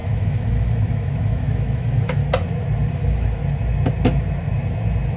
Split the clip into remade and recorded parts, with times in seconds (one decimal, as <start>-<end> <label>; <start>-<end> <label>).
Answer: 0.0-2.2 remade; 2.2-2.9 recorded; 2.9-3.4 remade; 3.4-5.2 recorded

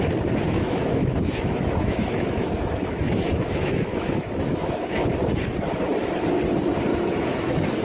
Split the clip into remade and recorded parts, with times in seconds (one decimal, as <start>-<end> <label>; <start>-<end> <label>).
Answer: 0.0-0.4 recorded; 0.4-5.1 remade; 5.1-6.9 recorded; 6.9-7.8 remade

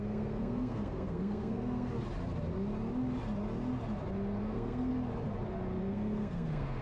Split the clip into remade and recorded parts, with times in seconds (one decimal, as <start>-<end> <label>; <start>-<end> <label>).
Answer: 0.0-1.9 remade; 1.9-4.4 recorded; 4.4-4.9 remade; 4.9-5.8 recorded; 5.8-6.8 remade

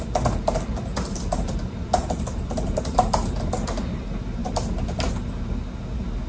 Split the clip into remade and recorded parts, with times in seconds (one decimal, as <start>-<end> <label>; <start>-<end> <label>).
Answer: 0.0-0.9 recorded; 0.9-3.5 remade; 3.5-4.4 recorded; 4.4-5.1 remade; 5.1-6.3 recorded

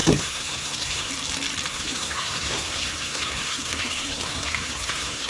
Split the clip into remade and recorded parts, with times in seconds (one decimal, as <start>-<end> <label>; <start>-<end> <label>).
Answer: 0.0-1.1 remade; 1.1-1.7 recorded; 1.7-5.3 remade